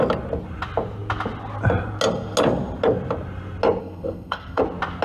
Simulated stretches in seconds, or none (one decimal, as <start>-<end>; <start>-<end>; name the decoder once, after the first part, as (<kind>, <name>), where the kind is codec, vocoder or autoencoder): 3.8-4.6 (codec, SNAC)